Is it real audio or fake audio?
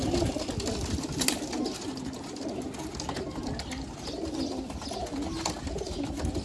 real